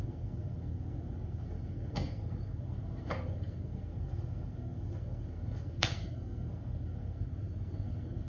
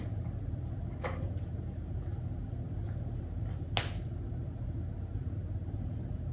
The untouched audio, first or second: second